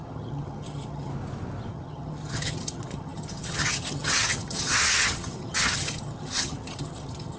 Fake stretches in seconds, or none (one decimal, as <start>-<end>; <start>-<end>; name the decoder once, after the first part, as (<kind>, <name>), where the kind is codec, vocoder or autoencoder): 0.0-1.1 (vocoder, HiFi-GAN); 1.7-7.4